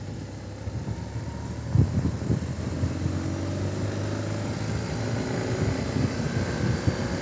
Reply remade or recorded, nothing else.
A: recorded